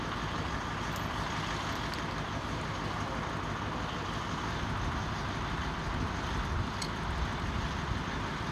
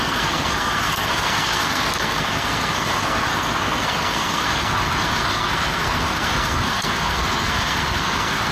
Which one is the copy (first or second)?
second